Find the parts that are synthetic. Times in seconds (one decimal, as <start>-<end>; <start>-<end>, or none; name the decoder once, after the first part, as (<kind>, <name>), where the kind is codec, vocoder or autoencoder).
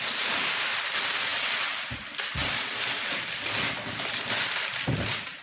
none